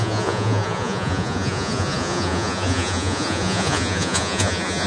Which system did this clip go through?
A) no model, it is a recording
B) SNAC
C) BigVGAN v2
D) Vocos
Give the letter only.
D